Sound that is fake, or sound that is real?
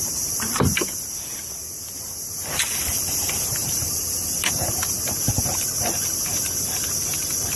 real